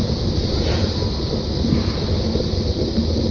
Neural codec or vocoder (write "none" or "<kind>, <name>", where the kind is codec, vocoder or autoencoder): none